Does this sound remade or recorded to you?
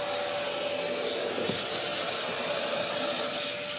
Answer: recorded